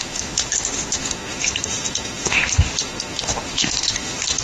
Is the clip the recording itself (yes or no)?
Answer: no